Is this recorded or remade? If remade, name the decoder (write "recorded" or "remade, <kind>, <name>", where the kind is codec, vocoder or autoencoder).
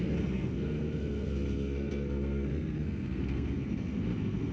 remade, codec, SNAC